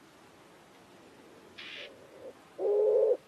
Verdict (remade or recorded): recorded